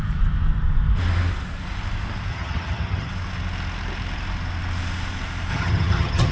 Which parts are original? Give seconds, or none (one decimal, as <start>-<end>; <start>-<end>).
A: 0.0-2.3; 3.1-5.5